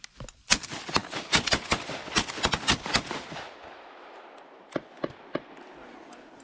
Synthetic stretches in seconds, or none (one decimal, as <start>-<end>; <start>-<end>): none